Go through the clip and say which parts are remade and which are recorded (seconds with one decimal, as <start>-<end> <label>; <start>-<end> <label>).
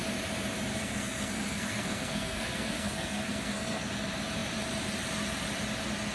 0.0-0.7 recorded; 0.7-3.9 remade; 3.9-6.1 recorded